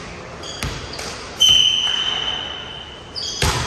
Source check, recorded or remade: recorded